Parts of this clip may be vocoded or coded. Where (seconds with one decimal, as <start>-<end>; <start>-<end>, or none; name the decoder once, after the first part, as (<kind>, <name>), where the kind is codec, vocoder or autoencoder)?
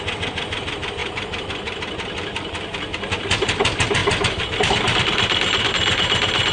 1.0-1.8 (vocoder, BigVGAN v2); 4.0-5.7